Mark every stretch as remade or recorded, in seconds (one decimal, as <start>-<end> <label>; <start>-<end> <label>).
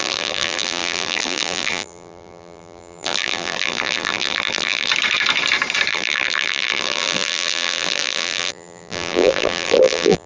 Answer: 0.0-4.9 remade; 4.9-5.9 recorded; 5.9-10.3 remade